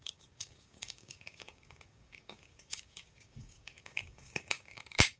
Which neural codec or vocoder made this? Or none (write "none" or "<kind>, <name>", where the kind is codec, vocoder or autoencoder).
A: codec, DAC